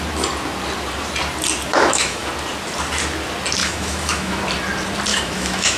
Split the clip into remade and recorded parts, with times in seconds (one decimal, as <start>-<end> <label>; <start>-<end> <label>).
0.0-1.7 recorded; 1.7-2.3 remade; 2.3-3.6 recorded; 3.6-4.4 remade; 4.4-5.1 recorded; 5.1-5.8 remade